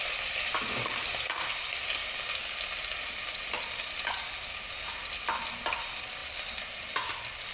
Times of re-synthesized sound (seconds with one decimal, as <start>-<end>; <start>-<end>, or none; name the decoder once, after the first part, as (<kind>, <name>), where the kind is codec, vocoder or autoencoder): none